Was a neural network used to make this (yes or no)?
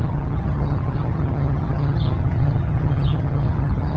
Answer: yes